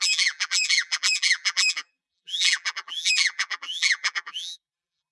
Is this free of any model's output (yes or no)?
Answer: no